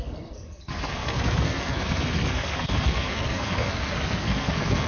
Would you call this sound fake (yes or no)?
yes